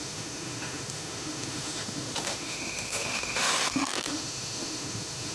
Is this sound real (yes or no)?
no